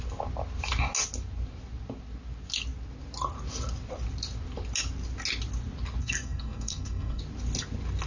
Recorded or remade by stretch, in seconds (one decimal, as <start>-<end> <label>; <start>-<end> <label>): 0.0-6.0 recorded; 6.0-7.2 remade; 7.2-8.1 recorded